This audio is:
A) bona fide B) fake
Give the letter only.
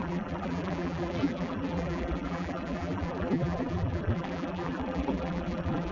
B